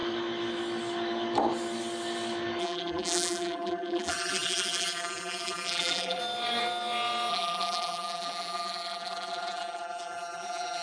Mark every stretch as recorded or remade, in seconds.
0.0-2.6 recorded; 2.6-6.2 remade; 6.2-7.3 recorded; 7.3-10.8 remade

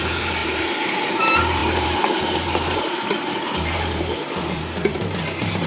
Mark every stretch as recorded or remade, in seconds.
0.0-5.7 remade

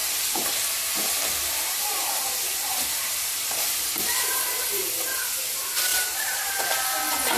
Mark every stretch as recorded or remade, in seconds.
0.0-4.4 remade; 4.4-5.9 recorded; 5.9-6.5 remade; 6.5-7.4 recorded

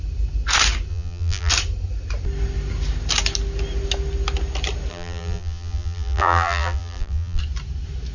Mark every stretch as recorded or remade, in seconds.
0.0-0.9 recorded; 0.9-1.5 remade; 1.5-4.9 recorded; 4.9-7.4 remade; 7.4-8.1 recorded

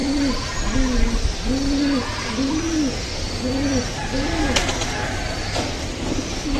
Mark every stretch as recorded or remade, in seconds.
0.0-6.6 recorded